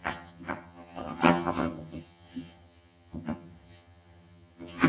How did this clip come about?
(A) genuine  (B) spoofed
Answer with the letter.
B